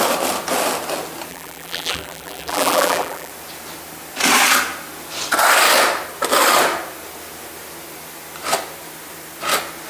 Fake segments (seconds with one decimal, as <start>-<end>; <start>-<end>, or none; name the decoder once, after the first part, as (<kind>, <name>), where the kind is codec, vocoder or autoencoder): 1.3-3.3 (vocoder, BigVGAN v2)